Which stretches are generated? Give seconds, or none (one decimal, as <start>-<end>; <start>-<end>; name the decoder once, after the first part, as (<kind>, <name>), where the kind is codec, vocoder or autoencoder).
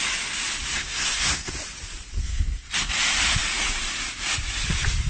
0.7-1.5 (codec, SNAC); 2.2-2.9